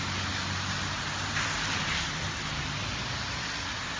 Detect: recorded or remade recorded